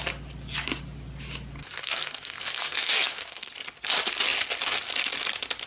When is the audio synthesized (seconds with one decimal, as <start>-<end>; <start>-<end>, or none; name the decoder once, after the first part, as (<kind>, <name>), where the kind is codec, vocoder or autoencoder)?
1.6-3.5 (codec, SNAC)